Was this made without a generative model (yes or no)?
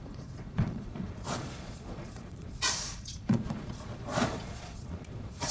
no